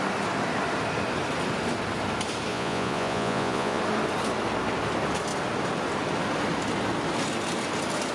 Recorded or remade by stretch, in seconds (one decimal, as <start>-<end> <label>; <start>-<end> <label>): 0.0-2.5 recorded; 2.5-3.8 remade; 3.8-8.1 recorded